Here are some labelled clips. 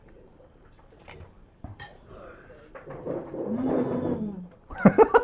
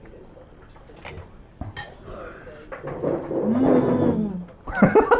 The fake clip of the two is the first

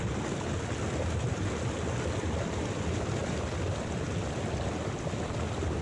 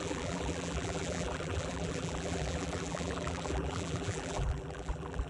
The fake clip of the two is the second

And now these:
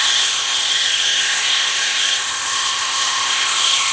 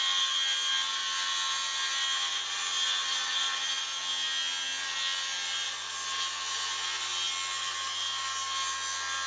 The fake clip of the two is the first